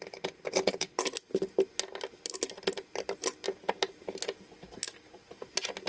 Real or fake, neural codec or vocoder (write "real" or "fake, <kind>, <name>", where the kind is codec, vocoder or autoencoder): real